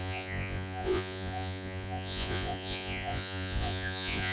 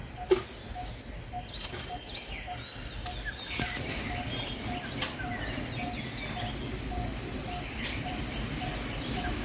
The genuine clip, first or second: second